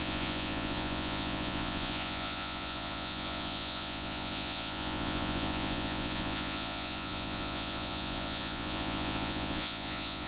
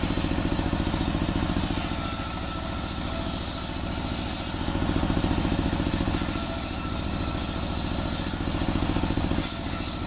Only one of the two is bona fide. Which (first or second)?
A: second